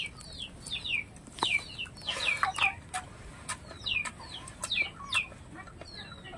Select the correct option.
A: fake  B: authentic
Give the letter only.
B